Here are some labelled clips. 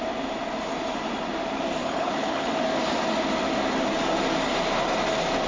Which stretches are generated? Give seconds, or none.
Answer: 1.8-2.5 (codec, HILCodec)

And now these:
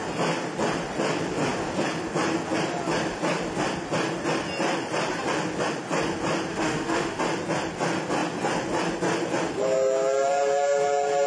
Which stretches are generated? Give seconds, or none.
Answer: 6.5-7.2 (autoencoder, DAC-VAE)

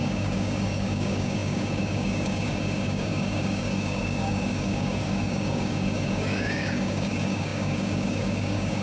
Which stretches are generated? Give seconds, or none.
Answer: 0.0-8.8 (codec, DAC)